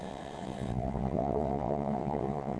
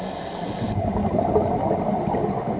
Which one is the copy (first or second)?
first